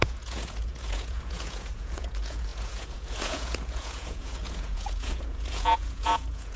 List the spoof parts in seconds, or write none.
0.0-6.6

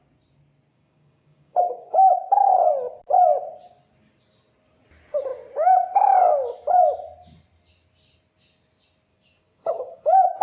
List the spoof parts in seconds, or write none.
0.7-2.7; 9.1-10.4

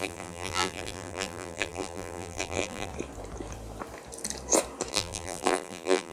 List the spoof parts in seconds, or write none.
0.0-2.9; 4.9-6.1

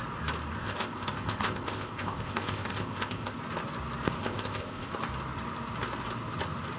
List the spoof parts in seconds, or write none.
0.6-3.4; 4.2-4.9

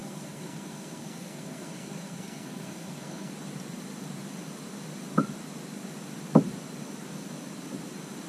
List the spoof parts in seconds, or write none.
0.0-3.3

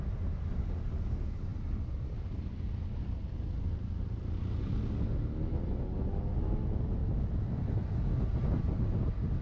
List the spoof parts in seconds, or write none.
none